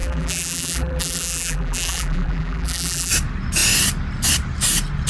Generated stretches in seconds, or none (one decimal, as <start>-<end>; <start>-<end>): 0.0-3.1